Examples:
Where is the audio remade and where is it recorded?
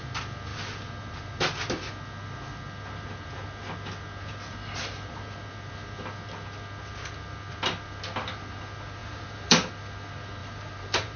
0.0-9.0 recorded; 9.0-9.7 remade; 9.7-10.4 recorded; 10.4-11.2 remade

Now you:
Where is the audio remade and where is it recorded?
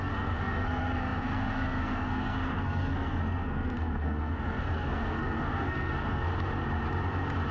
0.0-6.3 remade; 6.3-7.5 recorded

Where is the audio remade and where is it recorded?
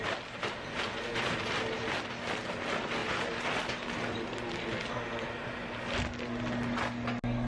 0.0-7.5 recorded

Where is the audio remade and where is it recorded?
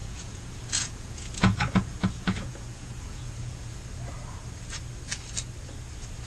0.0-3.8 remade; 3.8-6.3 recorded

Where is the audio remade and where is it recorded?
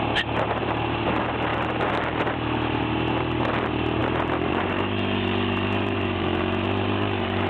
0.0-1.5 remade; 1.5-3.6 recorded; 3.6-7.5 remade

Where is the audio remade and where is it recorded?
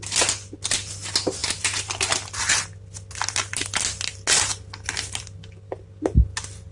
0.0-6.7 recorded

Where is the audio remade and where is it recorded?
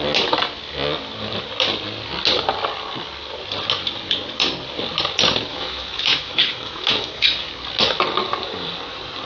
0.0-5.5 recorded; 5.5-7.5 remade; 7.5-9.2 recorded